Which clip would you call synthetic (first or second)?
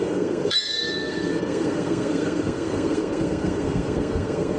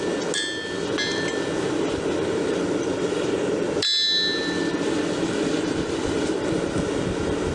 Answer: first